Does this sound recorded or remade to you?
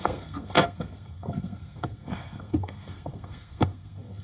remade